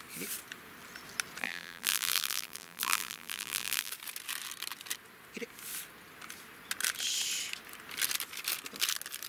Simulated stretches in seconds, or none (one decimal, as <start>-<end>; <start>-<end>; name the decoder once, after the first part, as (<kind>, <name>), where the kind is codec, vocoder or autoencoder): 1.4-3.9 (vocoder, BigVGAN v2)